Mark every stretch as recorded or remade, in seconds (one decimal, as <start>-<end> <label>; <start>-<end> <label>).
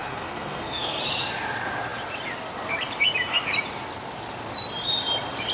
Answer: 0.0-1.0 remade; 1.0-5.5 recorded